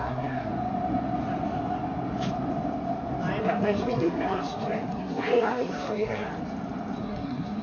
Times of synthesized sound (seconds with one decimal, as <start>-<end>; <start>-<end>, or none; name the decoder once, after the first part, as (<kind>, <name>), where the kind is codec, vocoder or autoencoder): 0.0-0.5 (codec, SNAC); 3.4-6.3; 7.0-7.6